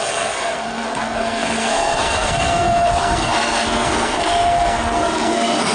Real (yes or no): no